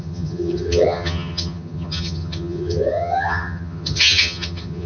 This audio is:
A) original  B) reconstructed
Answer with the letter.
B